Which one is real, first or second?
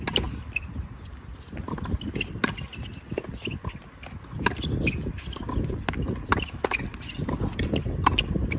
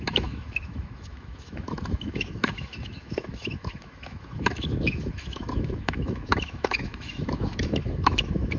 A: first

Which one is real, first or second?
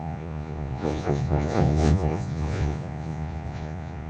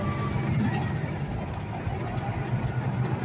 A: second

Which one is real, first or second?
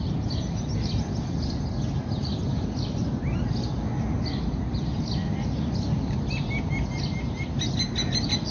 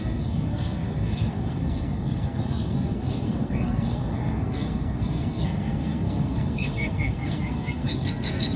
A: first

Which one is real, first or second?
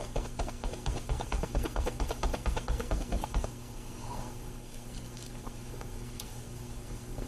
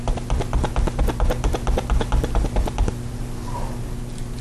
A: second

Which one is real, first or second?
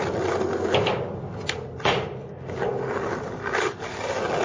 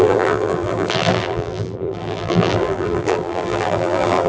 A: first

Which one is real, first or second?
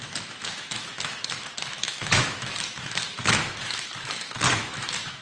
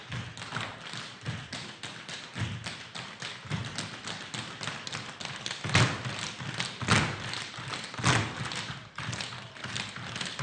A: second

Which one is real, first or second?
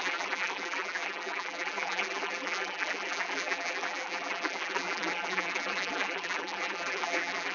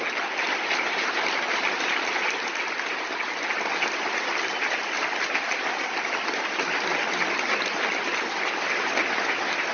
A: second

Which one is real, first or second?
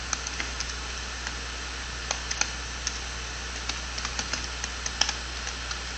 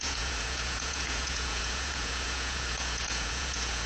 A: first